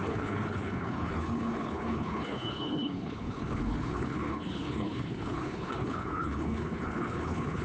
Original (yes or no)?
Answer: no